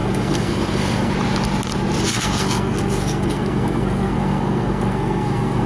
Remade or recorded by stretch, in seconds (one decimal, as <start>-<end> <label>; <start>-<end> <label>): 0.0-1.1 remade; 1.1-2.1 recorded; 2.1-5.7 remade